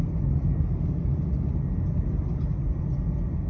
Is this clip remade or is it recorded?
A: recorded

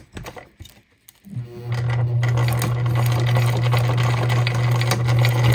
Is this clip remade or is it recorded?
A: recorded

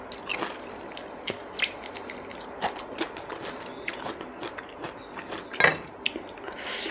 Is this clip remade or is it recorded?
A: recorded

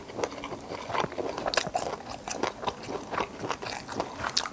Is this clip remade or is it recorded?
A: recorded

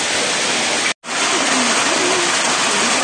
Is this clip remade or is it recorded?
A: recorded